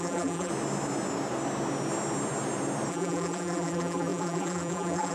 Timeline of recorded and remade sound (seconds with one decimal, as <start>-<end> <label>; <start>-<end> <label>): 0.0-0.5 remade; 0.5-2.9 recorded; 2.9-5.1 remade